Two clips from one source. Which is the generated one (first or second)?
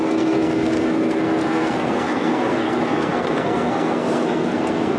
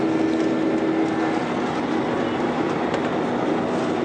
first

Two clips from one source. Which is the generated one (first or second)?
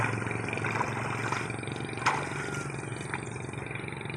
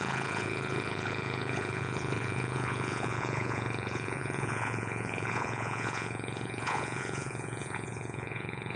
second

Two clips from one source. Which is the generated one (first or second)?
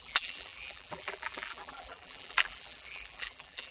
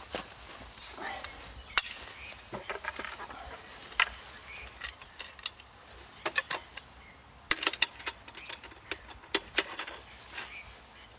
first